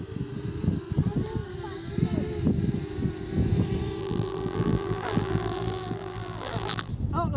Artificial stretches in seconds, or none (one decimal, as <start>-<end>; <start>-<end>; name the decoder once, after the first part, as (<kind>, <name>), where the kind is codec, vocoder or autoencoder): 4.0-6.9 (vocoder, BigVGAN v2)